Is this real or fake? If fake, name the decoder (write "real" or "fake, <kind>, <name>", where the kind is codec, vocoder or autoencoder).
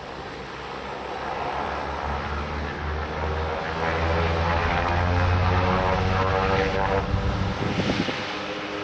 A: real